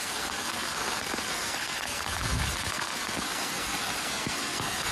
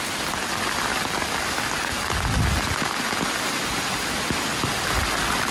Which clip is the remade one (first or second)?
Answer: first